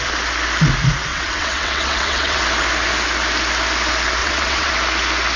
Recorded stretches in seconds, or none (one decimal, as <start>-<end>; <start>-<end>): 0.0-1.1; 2.4-4.2; 4.7-5.4